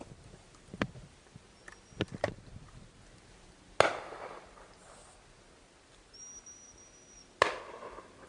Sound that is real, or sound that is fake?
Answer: real